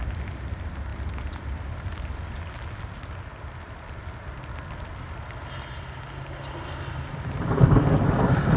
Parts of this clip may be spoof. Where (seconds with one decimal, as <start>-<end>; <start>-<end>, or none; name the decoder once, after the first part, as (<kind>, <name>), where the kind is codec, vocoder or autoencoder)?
7.1-8.6 (vocoder, BigVGAN v2)